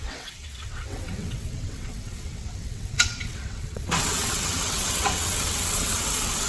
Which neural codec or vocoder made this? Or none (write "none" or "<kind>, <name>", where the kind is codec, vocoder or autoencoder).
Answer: vocoder, WaveNeXt